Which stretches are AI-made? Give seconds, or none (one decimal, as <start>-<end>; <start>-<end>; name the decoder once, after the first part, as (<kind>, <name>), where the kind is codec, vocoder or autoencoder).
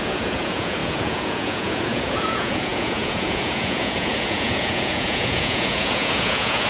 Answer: 0.0-6.7 (vocoder, Vocos)